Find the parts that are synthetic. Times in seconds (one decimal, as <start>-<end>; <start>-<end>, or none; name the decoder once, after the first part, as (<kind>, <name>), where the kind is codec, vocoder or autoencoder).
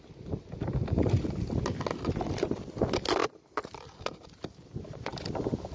none